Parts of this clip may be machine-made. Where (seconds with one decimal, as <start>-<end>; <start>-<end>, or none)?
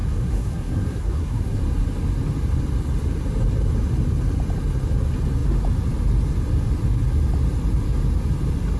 0.0-1.6